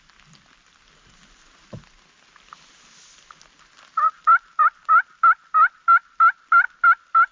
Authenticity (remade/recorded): recorded